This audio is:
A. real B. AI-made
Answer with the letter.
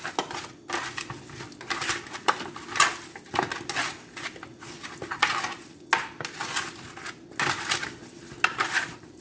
A